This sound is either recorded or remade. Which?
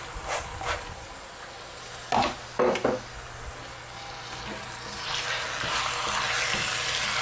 recorded